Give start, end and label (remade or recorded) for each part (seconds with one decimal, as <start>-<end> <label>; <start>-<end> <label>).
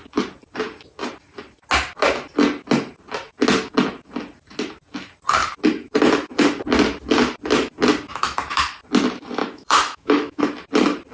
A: 0.0-8.1 recorded; 8.1-8.6 remade; 8.6-9.4 recorded; 9.4-10.4 remade; 10.4-11.1 recorded